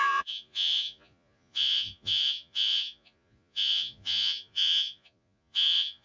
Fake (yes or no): yes